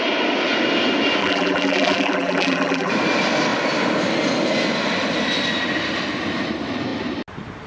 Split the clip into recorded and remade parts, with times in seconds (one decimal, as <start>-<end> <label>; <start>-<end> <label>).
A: 0.0-1.2 recorded; 1.2-2.9 remade; 2.9-7.7 recorded